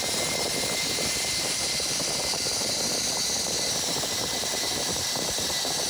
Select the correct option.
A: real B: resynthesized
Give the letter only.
B